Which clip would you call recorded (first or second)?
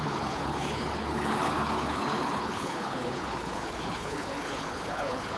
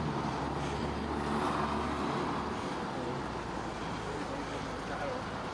second